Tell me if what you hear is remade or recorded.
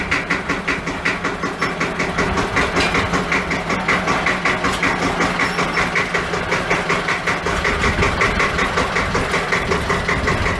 recorded